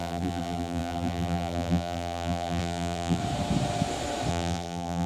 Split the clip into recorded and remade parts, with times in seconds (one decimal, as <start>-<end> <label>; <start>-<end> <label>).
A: 0.0-3.2 remade; 3.2-4.3 recorded; 4.3-5.1 remade